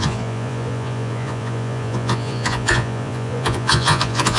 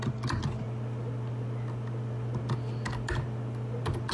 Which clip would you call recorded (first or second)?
second